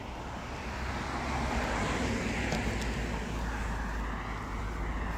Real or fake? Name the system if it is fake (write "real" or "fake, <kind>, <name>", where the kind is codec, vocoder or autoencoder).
real